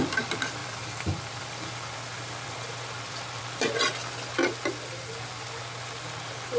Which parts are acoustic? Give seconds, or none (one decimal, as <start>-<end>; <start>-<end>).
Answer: 0.0-0.6; 3.4-6.6